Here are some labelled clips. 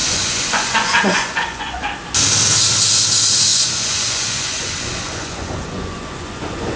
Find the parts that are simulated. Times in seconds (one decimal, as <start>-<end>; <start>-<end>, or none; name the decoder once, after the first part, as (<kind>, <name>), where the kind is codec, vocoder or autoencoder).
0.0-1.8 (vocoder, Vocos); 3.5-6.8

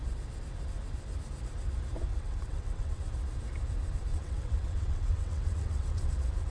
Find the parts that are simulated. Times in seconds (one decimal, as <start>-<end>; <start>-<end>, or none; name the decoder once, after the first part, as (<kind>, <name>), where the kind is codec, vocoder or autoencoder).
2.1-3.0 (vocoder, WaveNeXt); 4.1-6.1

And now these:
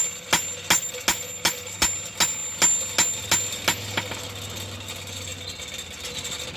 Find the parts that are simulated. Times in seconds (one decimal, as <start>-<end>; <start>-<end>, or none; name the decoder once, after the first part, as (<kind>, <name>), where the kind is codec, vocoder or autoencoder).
none

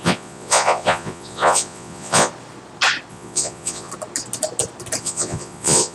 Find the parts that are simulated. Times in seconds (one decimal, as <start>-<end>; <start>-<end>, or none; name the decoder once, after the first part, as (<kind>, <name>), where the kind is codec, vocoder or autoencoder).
0.0-2.3 (vocoder, Vocos); 3.1-3.9; 5.0-5.9

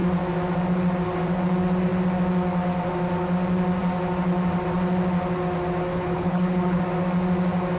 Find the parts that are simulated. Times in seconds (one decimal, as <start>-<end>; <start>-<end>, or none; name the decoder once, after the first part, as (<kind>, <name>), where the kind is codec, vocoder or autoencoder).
5.9-6.8 (codec, HILCodec)

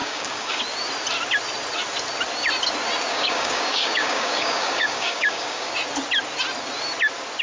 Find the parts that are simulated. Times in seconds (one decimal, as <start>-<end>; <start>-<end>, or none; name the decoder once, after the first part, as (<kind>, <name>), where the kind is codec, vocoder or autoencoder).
0.0-0.6 (codec, DAC); 3.1-5.7

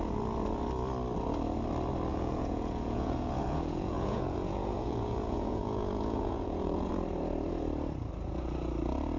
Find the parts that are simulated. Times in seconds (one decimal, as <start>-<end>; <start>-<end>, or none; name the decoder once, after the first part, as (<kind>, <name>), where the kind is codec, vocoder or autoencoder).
2.1-6.9 (vocoder, Vocos)

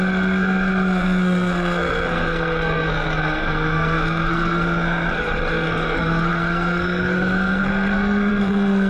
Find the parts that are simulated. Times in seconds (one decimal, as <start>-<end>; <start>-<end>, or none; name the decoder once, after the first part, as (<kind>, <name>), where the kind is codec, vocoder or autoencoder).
0.0-8.9 (codec, SNAC)